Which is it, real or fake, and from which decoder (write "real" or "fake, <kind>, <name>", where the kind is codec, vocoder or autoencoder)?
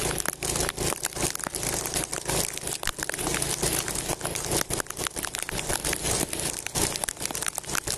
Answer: real